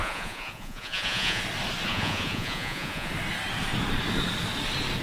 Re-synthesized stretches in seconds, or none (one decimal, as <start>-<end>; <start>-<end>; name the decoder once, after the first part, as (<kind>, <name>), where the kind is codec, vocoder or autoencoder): 0.0-1.4 (vocoder, Vocos); 1.9-3.1